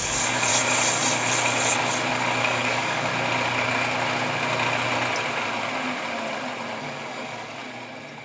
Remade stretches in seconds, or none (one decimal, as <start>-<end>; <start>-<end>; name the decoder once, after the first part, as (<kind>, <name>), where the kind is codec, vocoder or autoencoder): 0.0-0.5 (codec, DAC); 2.1-3.1; 6.8-7.6

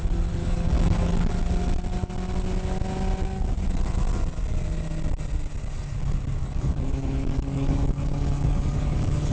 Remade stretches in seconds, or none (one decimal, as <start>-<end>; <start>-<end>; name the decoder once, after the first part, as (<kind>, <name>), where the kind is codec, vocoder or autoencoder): 0.4-1.3 (codec, DAC); 6.4-9.3

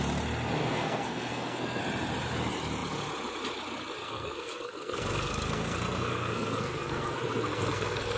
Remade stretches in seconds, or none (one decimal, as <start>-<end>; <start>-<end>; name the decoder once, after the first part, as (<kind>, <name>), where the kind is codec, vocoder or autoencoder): 0.6-1.8 (codec, SNAC); 4.0-8.2

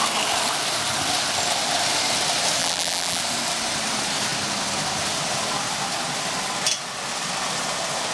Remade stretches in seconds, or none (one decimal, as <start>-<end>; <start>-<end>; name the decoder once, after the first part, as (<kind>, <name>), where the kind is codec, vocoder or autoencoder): 2.6-3.2 (vocoder, BigVGAN v2)

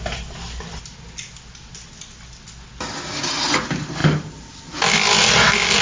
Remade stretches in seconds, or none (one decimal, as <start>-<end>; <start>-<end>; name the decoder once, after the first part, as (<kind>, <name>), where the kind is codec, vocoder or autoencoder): 4.0-4.6 (vocoder, BigVGAN v2)

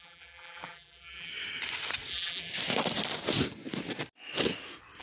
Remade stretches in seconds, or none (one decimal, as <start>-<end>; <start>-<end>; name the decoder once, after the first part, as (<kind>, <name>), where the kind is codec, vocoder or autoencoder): 0.0-1.3 (vocoder, BigVGAN v2); 2.1-2.5

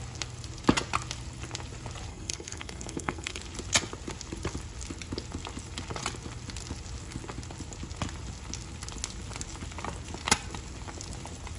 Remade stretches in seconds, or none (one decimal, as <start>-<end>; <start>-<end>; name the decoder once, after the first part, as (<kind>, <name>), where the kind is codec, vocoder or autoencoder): 2.1-3.4 (codec, SNAC)